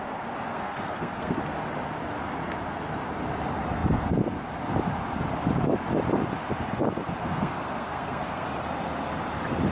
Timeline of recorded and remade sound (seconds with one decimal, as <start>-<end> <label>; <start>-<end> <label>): 0.0-0.5 recorded; 0.5-1.4 remade; 1.4-7.2 recorded; 7.2-8.5 remade; 8.5-9.7 recorded